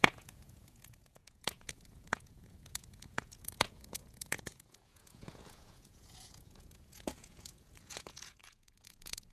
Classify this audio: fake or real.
fake